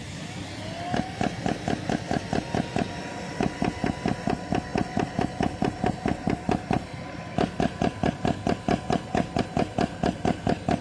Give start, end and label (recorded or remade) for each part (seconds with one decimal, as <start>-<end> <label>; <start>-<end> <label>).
0.0-10.8 recorded